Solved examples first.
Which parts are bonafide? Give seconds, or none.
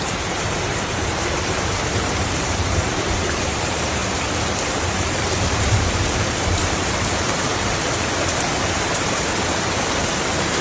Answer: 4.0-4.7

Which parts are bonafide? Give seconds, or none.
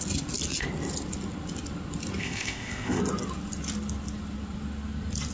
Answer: 0.0-2.2; 3.0-5.3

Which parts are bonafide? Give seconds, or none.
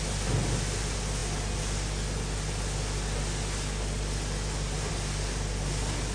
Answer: 0.0-6.1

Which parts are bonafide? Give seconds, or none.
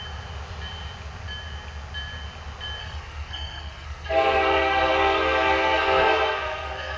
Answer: 0.0-2.8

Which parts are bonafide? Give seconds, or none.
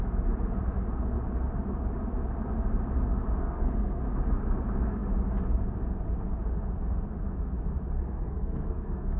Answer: 0.0-3.4; 4.0-8.0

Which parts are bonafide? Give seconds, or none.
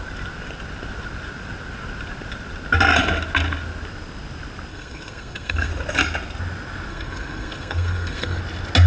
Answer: 0.0-4.7; 5.7-6.9; 8.4-8.9